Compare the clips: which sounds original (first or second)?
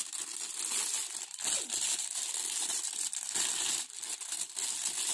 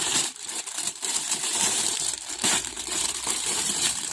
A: first